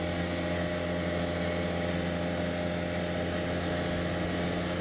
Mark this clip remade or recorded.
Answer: recorded